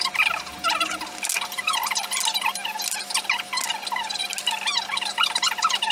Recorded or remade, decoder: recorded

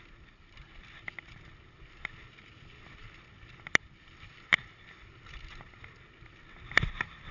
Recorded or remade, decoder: recorded